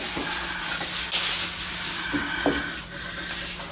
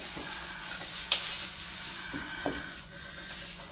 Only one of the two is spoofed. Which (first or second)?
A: second